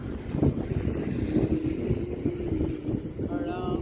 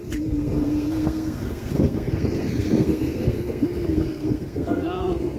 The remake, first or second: second